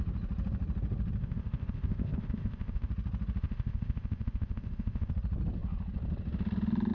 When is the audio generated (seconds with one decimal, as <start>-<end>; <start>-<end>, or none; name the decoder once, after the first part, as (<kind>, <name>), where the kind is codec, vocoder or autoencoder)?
1.2-2.9 (codec, ZipCodec); 3.4-5.1